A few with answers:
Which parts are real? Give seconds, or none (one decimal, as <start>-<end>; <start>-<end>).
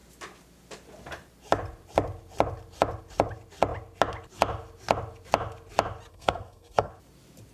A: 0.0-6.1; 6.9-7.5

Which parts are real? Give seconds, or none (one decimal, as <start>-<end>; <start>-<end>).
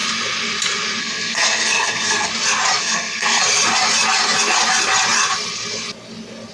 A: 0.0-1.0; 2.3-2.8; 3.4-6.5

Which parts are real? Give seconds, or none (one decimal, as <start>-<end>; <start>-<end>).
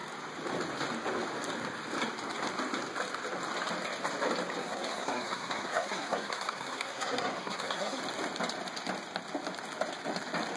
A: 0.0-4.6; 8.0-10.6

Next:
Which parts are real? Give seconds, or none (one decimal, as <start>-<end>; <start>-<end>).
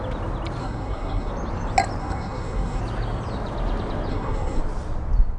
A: 0.0-0.6; 1.3-2.0; 2.8-4.1; 4.6-5.4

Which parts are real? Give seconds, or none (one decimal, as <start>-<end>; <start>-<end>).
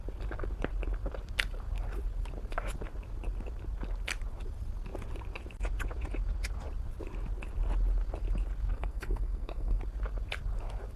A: 0.0-8.7; 9.8-11.0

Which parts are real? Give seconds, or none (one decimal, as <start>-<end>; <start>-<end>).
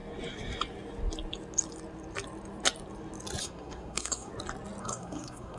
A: 0.0-3.4; 4.3-4.8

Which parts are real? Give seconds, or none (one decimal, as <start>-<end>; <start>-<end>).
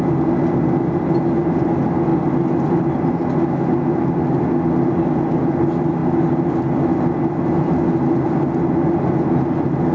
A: 0.0-9.9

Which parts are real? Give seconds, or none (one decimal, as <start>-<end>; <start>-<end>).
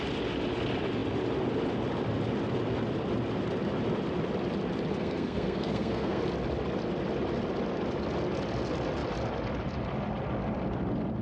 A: 0.0-4.9; 6.2-11.2